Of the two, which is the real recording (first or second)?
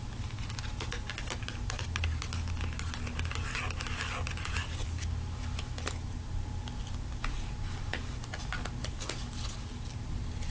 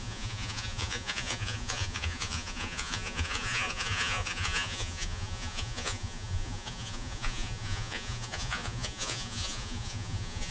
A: first